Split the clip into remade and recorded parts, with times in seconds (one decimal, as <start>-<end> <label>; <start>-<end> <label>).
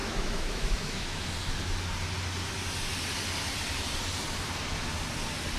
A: 0.0-1.2 remade; 1.2-5.6 recorded